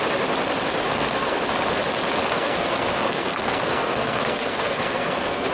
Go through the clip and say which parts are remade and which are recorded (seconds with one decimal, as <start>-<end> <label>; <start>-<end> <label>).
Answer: 0.0-0.8 recorded; 0.8-1.4 remade; 1.4-2.2 recorded; 2.2-5.5 remade